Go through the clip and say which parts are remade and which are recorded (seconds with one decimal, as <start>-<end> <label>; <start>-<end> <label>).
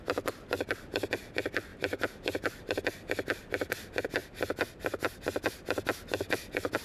0.0-1.7 recorded; 1.7-2.8 remade; 2.8-4.2 recorded; 4.2-5.2 remade; 5.2-6.8 recorded